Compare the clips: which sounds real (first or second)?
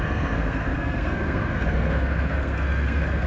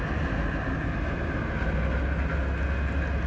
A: second